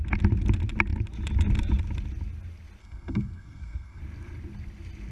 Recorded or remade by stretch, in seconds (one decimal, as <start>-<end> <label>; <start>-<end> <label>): 0.0-2.8 recorded; 2.8-4.0 remade; 4.0-5.1 recorded